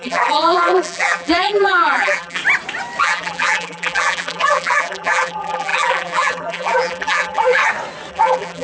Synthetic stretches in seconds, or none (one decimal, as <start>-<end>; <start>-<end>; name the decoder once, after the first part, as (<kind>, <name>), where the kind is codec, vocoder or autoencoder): 0.0-2.4 (vocoder, BigVGAN v2); 3.0-7.6; 8.1-8.6